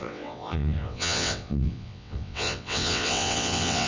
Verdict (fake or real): fake